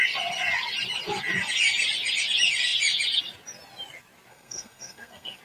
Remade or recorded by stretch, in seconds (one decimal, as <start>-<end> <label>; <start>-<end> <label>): 0.0-4.3 recorded; 4.3-5.4 remade